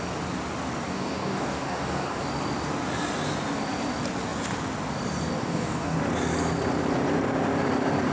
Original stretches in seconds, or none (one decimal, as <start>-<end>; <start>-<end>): 0.0-0.9; 2.2-5.4; 6.0-8.1